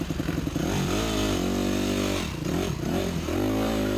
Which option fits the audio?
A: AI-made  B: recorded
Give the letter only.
B